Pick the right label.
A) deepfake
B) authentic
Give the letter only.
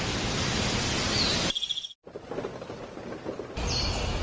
B